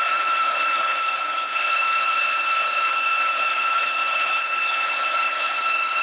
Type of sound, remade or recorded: remade